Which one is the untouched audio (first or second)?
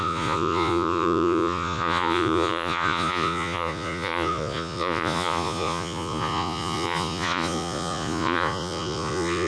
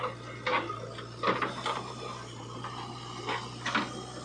second